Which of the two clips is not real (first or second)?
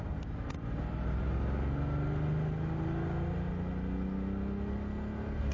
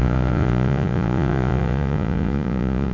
second